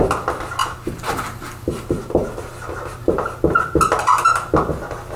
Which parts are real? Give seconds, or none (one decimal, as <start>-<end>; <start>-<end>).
0.0-5.2